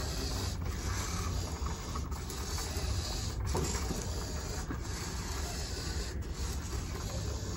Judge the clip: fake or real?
real